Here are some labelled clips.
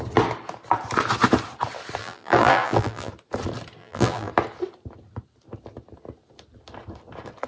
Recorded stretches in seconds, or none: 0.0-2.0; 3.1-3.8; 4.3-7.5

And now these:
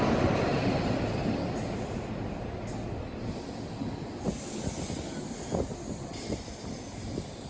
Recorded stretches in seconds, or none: 0.0-7.5

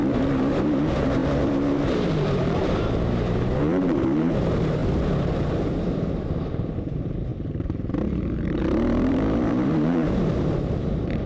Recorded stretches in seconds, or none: 4.8-5.8

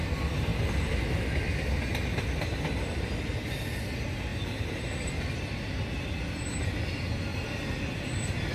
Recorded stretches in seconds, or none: 0.0-7.3; 7.8-8.5

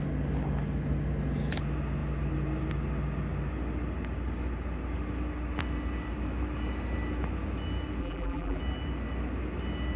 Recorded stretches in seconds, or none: 0.0-8.0; 8.6-10.0

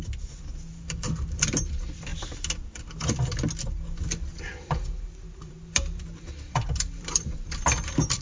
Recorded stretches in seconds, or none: 2.1-4.4